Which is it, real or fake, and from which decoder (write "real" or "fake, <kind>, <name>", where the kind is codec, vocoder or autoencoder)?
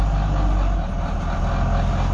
real